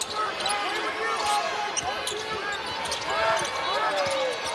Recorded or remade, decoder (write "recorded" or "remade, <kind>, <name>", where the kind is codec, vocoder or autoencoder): recorded